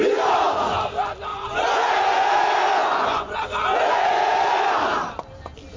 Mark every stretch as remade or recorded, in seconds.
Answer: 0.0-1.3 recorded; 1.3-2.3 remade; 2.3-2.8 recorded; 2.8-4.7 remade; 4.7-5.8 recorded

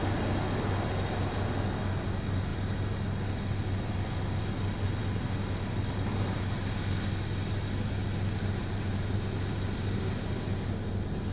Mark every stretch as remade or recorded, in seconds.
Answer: 0.0-11.3 recorded

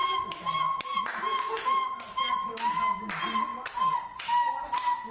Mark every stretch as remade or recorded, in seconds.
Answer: 0.0-5.1 recorded

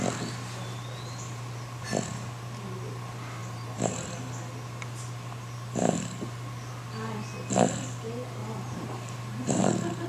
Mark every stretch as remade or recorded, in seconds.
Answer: 0.0-3.4 recorded; 3.4-4.3 remade; 4.3-8.4 recorded; 8.4-9.6 remade; 9.6-10.1 recorded

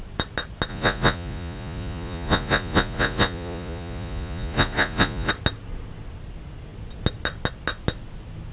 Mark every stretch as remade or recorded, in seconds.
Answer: 0.0-0.7 recorded; 0.7-5.3 remade; 5.3-8.5 recorded

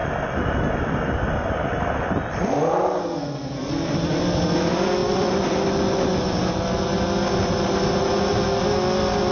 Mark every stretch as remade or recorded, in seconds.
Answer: 0.0-3.0 recorded; 3.0-3.7 remade; 3.7-9.3 recorded

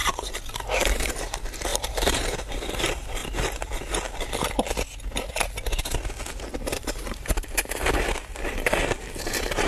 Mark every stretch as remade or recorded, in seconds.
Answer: 0.0-0.9 recorded; 0.9-3.2 remade; 3.2-6.3 recorded; 6.3-9.7 remade

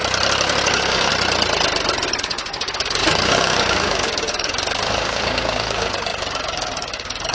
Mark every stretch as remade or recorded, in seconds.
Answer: 0.0-0.7 recorded; 0.7-1.1 remade; 1.1-2.2 recorded; 2.2-7.3 remade